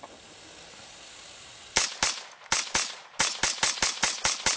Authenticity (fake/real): real